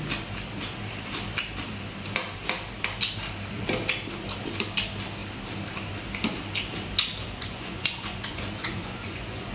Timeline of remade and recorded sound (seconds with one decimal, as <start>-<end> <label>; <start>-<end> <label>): 0.0-7.2 recorded; 7.2-9.5 remade